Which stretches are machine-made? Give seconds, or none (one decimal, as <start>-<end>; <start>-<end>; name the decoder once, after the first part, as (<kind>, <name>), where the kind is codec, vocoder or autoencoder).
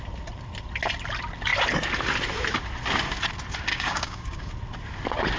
3.7-4.5 (codec, DAC)